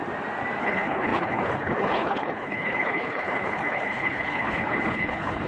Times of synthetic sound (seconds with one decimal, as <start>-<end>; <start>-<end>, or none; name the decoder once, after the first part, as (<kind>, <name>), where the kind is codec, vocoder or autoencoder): 0.6-5.5 (codec, HILCodec)